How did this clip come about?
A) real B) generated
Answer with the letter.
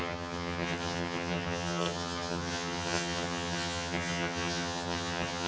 B